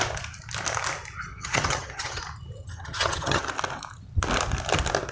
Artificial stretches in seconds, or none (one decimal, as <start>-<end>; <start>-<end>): 1.3-2.2; 2.6-3.5